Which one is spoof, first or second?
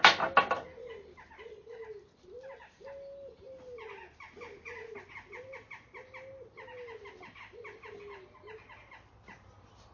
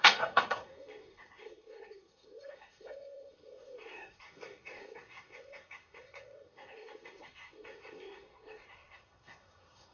second